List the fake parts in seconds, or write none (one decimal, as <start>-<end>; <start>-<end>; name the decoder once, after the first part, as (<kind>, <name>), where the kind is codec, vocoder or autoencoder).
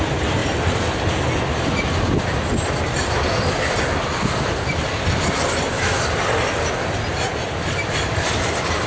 none